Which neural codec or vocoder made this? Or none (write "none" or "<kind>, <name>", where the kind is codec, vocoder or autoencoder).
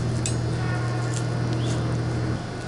none